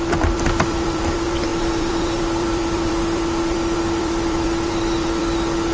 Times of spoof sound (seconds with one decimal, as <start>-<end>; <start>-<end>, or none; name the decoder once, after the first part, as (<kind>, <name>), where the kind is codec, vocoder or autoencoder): 0.0-5.7 (vocoder, BigVGAN v2)